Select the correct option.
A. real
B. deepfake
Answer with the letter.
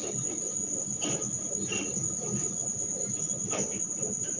A